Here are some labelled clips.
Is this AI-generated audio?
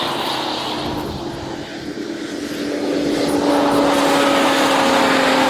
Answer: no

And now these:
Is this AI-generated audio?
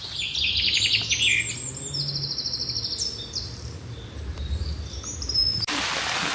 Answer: no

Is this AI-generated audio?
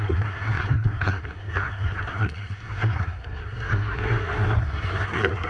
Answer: yes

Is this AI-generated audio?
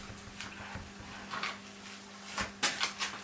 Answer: no